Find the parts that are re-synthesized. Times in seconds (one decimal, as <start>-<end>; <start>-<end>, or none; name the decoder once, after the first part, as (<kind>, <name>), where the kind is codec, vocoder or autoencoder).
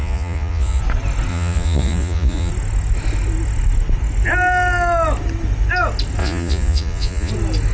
0.0-0.8 (vocoder, Vocos); 1.3-2.5; 6.2-7.3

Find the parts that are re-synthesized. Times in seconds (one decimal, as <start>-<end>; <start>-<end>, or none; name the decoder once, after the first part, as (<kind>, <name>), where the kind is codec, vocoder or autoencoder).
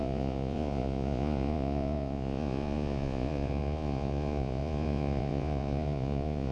0.0-6.5 (vocoder, Vocos)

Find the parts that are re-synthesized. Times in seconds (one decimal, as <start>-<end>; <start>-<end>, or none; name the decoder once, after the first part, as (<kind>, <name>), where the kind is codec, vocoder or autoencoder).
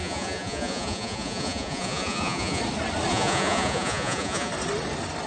0.0-2.6 (vocoder, Vocos); 3.1-4.5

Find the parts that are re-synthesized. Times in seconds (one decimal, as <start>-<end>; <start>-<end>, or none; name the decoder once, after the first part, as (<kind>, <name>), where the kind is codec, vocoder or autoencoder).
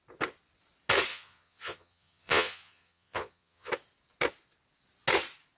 1.1-3.7 (vocoder, Vocos)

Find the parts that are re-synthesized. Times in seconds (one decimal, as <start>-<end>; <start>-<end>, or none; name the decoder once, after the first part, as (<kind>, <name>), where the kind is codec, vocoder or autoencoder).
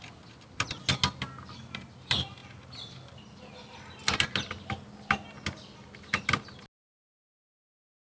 none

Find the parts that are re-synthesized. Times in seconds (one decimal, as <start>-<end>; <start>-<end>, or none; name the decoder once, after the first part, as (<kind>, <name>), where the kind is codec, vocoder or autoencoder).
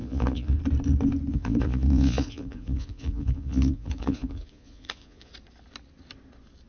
0.0-0.6 (vocoder, Vocos); 1.3-5.3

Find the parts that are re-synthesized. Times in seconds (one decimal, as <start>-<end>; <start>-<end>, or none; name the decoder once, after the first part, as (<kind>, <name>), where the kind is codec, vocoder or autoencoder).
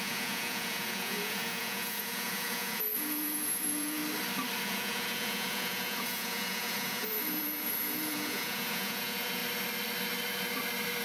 0.0-4.0 (vocoder, Vocos); 4.6-9.4